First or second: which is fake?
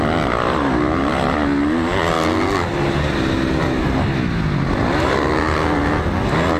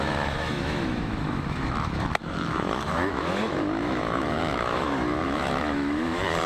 second